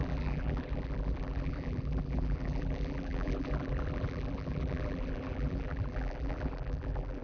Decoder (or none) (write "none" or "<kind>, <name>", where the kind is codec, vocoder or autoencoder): vocoder, BigVGAN v2